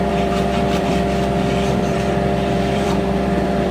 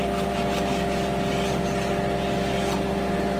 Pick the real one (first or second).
second